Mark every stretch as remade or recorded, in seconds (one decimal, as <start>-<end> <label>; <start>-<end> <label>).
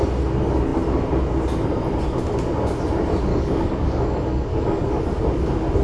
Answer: 0.0-3.3 recorded; 3.3-5.0 remade; 5.0-5.8 recorded